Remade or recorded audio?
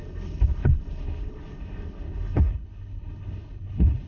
remade